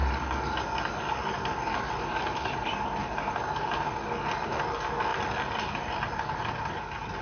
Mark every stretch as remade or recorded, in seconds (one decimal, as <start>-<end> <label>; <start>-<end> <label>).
0.0-7.2 recorded